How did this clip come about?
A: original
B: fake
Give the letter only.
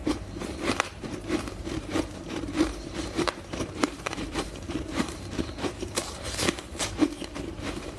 B